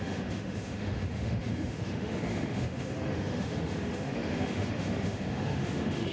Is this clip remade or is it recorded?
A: remade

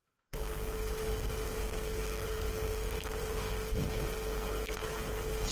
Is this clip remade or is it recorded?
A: remade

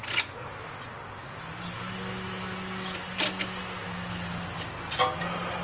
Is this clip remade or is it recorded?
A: recorded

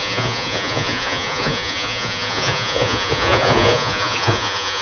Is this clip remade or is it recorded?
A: remade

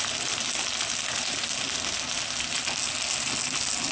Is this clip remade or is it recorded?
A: recorded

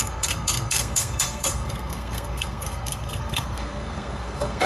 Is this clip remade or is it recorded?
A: remade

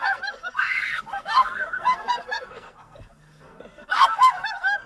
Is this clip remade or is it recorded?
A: remade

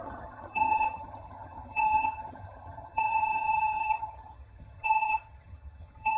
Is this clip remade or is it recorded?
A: remade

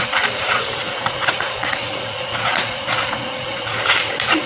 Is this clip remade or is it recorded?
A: remade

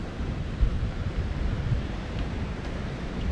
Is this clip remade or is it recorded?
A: remade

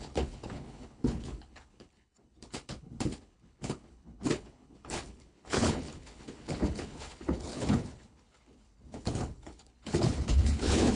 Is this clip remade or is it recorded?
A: remade